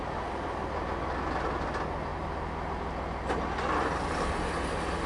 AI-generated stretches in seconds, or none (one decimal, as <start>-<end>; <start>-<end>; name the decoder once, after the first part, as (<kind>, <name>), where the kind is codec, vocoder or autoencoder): none

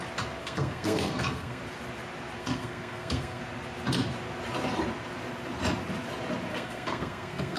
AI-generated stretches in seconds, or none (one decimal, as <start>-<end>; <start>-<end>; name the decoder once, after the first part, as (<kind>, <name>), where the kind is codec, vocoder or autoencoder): 0.4-1.6 (codec, SNAC); 2.4-3.4; 6.5-7.6

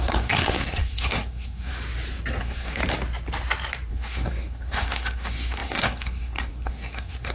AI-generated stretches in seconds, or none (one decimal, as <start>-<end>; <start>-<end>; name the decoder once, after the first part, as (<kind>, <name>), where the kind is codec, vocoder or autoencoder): 0.0-1.7 (codec, SNAC); 2.4-2.8; 3.9-7.3

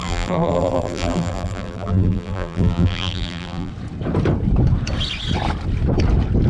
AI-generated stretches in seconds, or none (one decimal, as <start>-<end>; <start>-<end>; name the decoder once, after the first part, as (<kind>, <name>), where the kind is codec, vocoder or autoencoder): 0.0-3.7 (vocoder, BigVGAN v2)

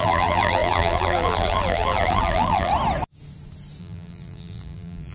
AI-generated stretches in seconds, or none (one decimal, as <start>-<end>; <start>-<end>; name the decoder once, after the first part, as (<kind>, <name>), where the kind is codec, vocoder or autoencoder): 0.0-2.7 (vocoder, BigVGAN v2); 3.8-5.1

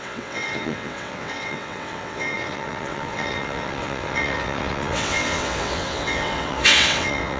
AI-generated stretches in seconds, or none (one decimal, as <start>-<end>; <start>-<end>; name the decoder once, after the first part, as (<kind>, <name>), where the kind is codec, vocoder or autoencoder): 0.0-7.4 (vocoder, WaveNeXt)

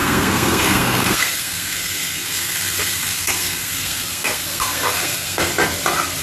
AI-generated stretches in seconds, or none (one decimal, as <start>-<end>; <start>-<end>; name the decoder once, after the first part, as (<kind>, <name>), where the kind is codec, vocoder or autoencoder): 0.0-5.5 (codec, SNAC)